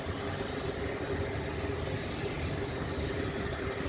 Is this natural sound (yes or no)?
yes